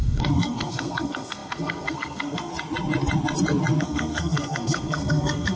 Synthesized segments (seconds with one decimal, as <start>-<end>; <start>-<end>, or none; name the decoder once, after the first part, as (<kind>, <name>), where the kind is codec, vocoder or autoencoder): 0.0-2.5 (codec, SNAC); 3.8-5.6

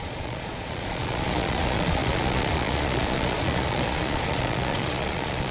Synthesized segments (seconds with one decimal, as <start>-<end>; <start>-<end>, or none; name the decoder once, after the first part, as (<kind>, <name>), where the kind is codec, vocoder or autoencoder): 0.0-5.5 (vocoder, Vocos)

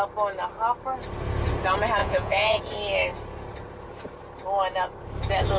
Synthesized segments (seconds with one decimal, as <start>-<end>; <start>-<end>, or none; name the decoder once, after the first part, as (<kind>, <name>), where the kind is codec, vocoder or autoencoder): 2.0-2.6 (vocoder, Vocos)

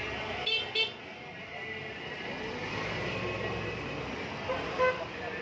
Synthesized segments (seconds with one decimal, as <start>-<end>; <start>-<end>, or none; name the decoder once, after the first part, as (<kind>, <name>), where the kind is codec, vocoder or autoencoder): none